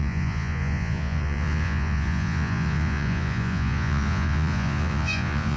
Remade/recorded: remade